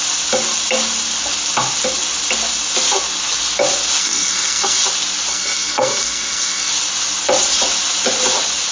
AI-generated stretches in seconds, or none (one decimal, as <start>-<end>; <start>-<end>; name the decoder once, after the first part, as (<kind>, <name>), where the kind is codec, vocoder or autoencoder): 4.0-4.8 (codec, SNAC); 5.3-6.7

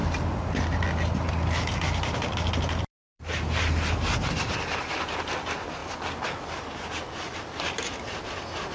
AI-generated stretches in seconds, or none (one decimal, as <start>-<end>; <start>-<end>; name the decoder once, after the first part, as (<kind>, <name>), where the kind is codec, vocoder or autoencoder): 1.3-8.7 (vocoder, BigVGAN v2)